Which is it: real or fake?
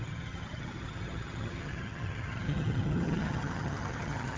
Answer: fake